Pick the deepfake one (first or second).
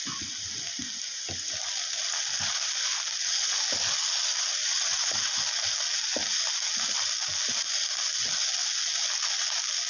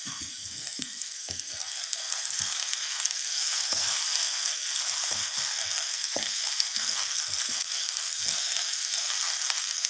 second